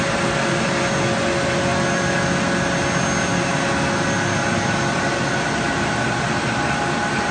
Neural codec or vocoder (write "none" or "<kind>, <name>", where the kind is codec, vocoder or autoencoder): none